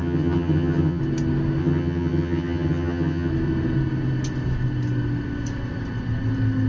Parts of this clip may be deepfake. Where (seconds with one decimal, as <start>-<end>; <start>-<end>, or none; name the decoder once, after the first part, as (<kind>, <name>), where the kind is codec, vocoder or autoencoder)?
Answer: 0.0-1.0 (vocoder, HiFi-GAN); 1.6-3.3